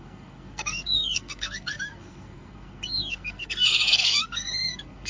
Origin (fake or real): fake